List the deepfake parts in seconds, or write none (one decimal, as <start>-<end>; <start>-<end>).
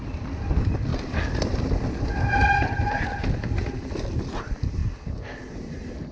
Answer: none